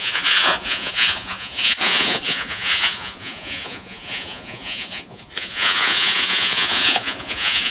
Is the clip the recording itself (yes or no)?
no